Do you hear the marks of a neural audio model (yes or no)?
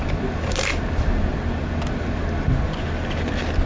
no